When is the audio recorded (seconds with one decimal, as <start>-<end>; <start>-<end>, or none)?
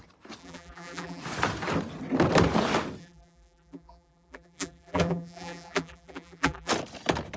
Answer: 0.0-0.4; 1.2-3.0; 6.7-7.4